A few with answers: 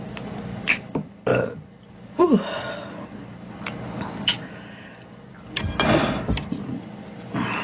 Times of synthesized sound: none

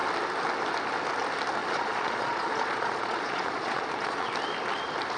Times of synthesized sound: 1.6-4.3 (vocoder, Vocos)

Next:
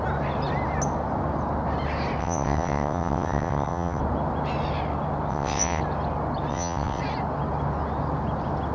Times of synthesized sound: 2.2-4.0 (vocoder, WaveNeXt); 5.3-5.8; 6.5-7.0